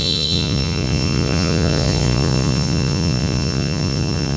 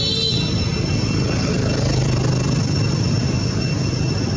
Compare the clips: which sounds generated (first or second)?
first